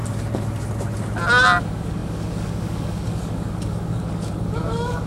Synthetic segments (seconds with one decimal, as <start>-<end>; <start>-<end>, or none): 1.6-5.1